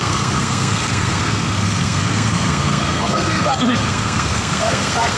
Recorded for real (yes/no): no